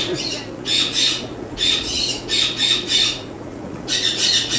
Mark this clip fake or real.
fake